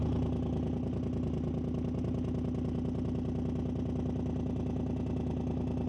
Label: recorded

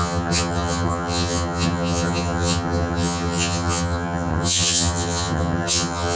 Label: remade